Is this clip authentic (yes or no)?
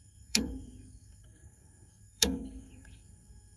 no